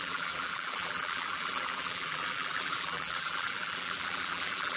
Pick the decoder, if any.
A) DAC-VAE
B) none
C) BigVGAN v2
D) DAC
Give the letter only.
C